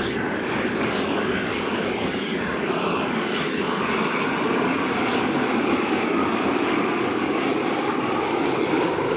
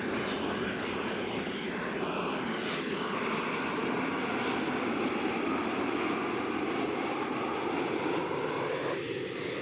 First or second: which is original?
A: second